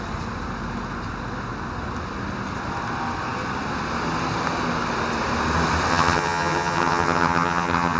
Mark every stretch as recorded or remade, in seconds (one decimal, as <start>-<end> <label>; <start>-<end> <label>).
0.0-5.9 recorded; 5.9-8.0 remade